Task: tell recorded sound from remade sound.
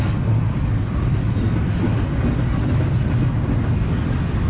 recorded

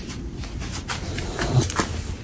remade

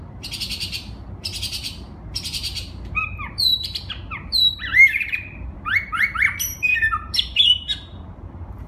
remade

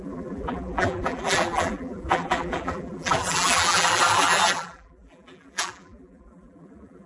remade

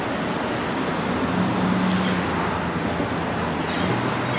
recorded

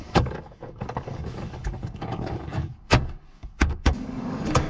remade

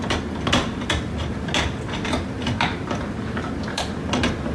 recorded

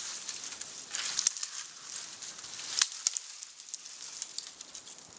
recorded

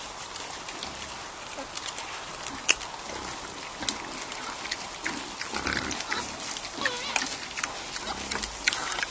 recorded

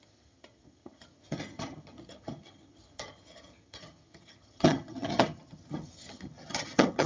remade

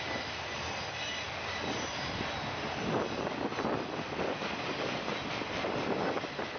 recorded